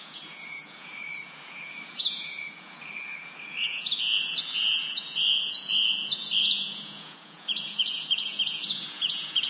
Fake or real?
fake